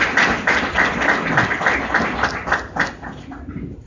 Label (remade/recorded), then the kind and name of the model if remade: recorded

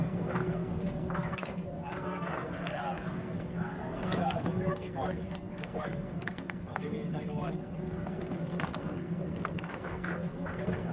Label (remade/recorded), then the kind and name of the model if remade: remade, codec, SNAC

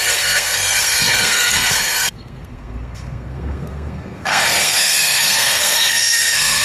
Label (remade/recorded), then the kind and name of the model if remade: remade, codec, SNAC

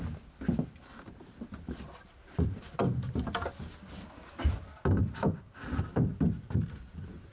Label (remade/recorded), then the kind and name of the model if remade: recorded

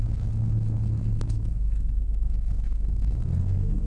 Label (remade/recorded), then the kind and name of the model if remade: remade, codec, SNAC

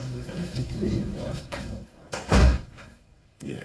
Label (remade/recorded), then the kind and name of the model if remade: remade, codec, SNAC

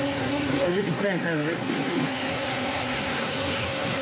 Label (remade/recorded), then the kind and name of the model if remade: remade, codec, SNAC